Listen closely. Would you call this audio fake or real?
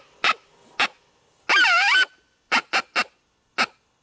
real